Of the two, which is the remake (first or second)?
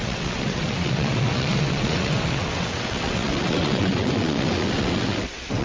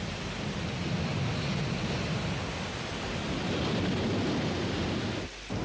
first